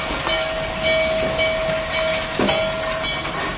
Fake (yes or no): no